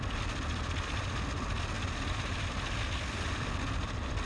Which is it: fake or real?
real